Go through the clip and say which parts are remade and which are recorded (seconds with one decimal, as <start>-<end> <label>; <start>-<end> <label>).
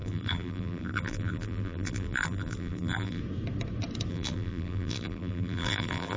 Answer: 0.0-3.2 remade; 3.2-4.1 recorded; 4.1-6.2 remade